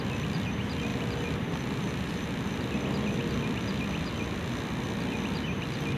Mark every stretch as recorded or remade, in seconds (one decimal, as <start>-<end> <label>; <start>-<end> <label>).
0.0-6.0 recorded

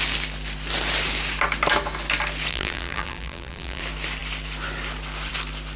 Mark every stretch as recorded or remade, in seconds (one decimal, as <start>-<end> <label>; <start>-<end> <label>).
0.0-2.5 recorded; 2.5-3.8 remade; 3.8-5.8 recorded

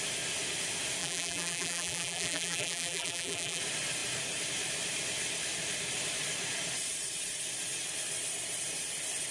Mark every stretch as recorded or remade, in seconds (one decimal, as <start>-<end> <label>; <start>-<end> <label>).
0.0-1.0 recorded; 1.0-3.6 remade; 3.6-9.3 recorded

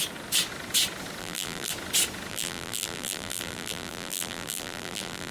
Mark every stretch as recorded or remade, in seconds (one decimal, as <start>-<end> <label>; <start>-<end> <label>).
0.0-1.2 recorded; 1.2-1.7 remade; 1.7-2.3 recorded; 2.3-5.3 remade

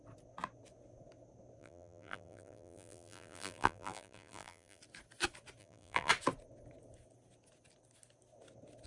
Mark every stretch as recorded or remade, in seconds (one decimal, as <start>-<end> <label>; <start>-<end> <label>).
0.0-1.6 recorded; 1.6-4.8 remade; 4.8-5.6 recorded; 5.6-6.1 remade; 6.1-8.9 recorded

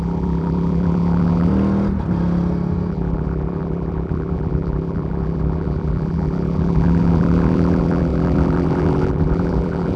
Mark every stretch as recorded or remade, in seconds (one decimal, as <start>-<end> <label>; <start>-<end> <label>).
0.0-1.5 remade; 1.5-2.9 recorded; 2.9-10.0 remade

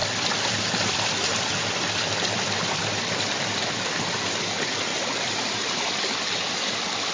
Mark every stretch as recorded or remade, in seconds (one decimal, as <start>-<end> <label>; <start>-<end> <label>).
0.0-4.1 remade; 4.1-4.9 recorded; 4.9-6.0 remade; 6.0-7.1 recorded

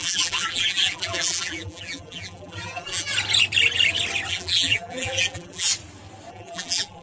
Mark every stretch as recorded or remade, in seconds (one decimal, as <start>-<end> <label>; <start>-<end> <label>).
0.0-3.1 remade; 3.1-4.3 recorded; 4.3-5.7 remade; 5.7-6.3 recorded; 6.3-7.0 remade